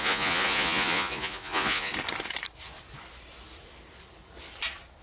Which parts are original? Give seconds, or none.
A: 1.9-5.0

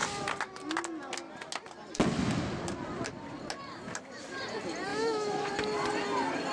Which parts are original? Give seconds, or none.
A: 0.0-4.9; 5.5-6.5

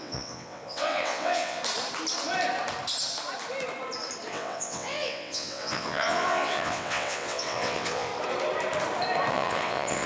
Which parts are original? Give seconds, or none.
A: 1.6-4.3; 8.1-9.3

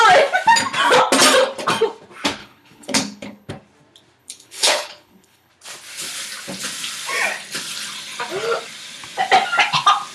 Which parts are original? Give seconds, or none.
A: 0.0-2.4; 3.5-4.2; 5.5-10.1